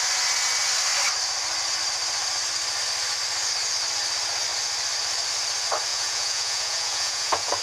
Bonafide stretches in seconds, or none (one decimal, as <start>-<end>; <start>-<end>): 0.0-5.9